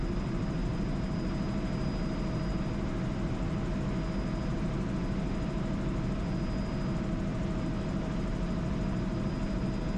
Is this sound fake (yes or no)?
no